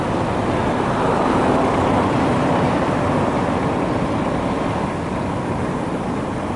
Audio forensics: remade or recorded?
recorded